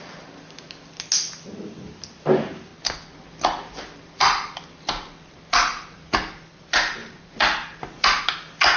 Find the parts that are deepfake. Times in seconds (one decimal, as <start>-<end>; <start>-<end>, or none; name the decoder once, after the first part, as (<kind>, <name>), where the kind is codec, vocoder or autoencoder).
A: none